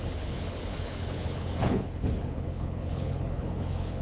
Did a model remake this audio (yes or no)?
yes